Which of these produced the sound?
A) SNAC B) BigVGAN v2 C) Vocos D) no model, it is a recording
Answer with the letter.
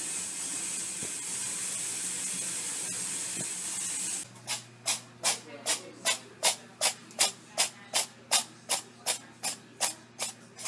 D